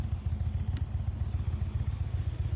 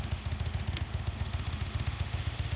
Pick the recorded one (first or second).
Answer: first